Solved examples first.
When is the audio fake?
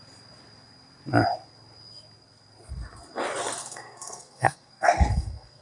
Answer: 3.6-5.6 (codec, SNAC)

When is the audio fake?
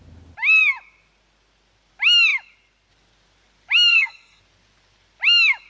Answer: 3.9-4.4 (codec, SNAC)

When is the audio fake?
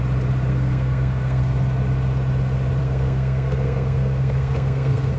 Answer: 0.5-1.4 (codec, SNAC); 2.8-5.2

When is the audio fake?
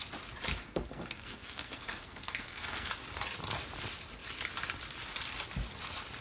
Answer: 0.6-2.9 (codec, SNAC)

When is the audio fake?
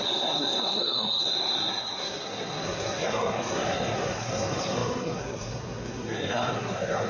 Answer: 0.0-7.1 (codec, SNAC)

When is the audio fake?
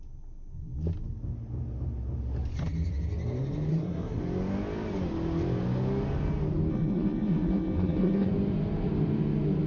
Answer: 3.7-4.2 (codec, SNAC); 6.7-8.3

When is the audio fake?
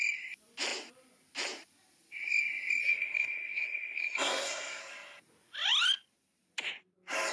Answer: 2.8-4.8 (codec, SNAC)